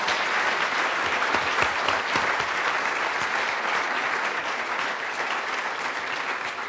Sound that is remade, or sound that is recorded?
recorded